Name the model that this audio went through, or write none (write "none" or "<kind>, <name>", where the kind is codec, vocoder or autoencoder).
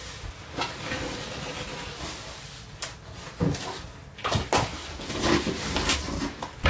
none